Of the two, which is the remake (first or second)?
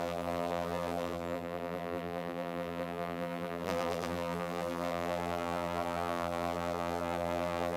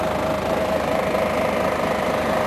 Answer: first